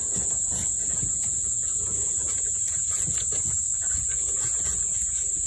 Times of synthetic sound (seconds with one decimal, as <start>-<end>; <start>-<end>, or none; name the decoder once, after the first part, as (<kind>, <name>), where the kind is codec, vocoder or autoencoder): 0.0-5.5 (vocoder, Vocos)